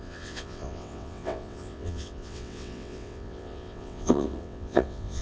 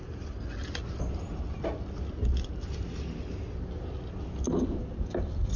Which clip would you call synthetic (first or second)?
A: first